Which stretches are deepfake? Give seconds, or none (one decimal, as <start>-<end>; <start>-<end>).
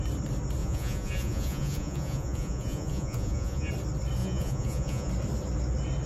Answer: 0.6-3.7; 4.2-5.1